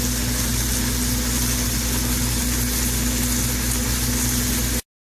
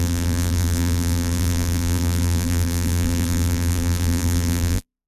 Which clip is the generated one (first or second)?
second